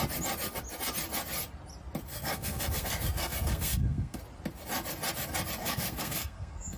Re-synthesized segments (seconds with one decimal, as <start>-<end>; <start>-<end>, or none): 2.1-4.2; 5.6-6.8